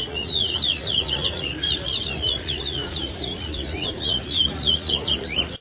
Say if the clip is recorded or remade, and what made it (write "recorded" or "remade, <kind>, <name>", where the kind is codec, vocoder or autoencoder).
remade, vocoder, Vocos